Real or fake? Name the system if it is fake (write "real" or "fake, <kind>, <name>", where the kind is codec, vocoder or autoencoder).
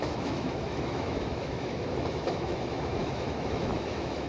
fake, autoencoder, DAC-VAE